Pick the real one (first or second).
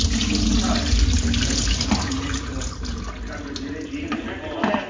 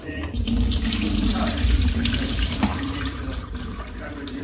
first